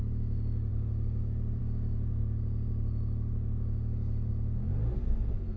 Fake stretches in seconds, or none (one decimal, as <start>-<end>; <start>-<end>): none